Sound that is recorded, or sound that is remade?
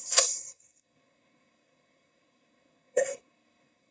remade